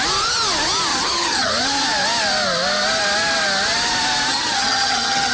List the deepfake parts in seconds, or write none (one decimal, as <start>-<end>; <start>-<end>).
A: 0.9-1.5; 4.3-5.3